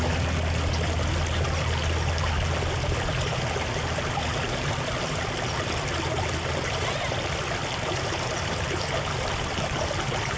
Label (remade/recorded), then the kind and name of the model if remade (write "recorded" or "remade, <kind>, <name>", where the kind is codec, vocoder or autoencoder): recorded